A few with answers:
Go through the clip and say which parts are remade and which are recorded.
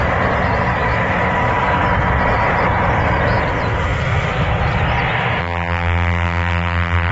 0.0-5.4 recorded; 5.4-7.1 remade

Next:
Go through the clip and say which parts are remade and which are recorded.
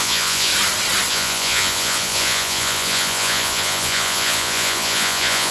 0.0-0.5 remade; 0.5-1.1 recorded; 1.1-5.5 remade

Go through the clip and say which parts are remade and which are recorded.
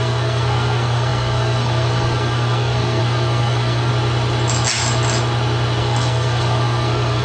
0.0-3.9 remade; 3.9-5.8 recorded; 5.8-7.2 remade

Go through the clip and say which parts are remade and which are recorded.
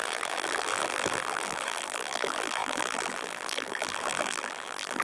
0.0-5.0 remade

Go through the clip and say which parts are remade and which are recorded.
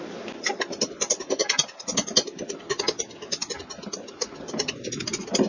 0.0-5.5 recorded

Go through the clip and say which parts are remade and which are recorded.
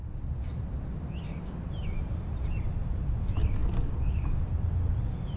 0.0-3.6 recorded; 3.6-4.5 remade; 4.5-5.4 recorded